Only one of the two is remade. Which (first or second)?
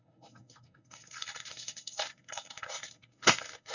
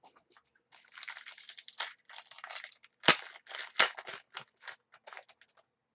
first